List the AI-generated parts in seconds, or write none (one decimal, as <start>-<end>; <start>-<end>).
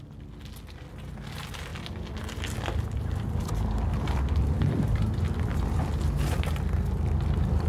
none